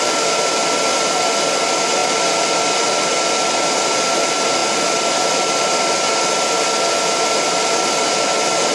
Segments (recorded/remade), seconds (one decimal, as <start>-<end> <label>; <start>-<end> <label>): 0.0-8.7 recorded